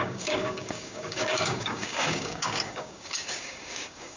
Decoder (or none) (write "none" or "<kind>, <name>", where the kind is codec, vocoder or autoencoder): codec, DAC